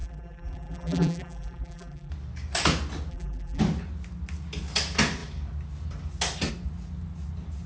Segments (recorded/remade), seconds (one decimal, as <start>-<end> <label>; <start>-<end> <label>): 0.0-2.1 remade; 2.1-3.1 recorded; 3.1-3.6 remade; 3.6-7.7 recorded